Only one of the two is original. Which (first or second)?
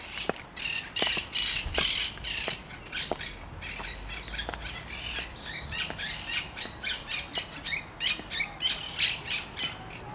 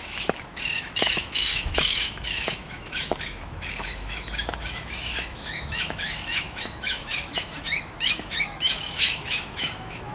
first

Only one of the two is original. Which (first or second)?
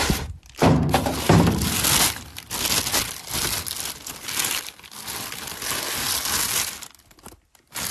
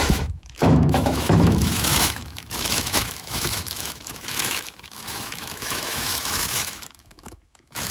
first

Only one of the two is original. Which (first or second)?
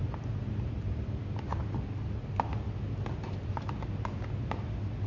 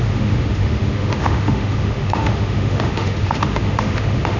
first